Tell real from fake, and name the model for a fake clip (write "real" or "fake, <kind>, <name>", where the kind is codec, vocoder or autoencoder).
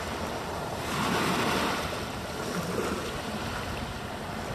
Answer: real